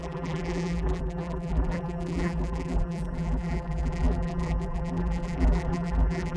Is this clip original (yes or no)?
no